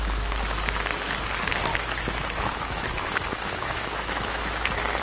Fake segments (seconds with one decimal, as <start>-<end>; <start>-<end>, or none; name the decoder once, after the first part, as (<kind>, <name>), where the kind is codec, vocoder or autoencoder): 1.7-5.0 (autoencoder, DAC-VAE)